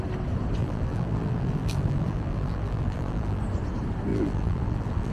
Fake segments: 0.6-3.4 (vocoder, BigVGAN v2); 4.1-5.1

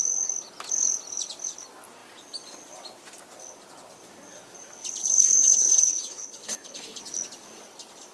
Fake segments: 5.0-7.0 (codec, HILCodec)